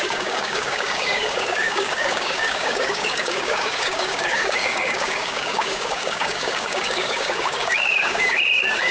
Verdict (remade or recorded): remade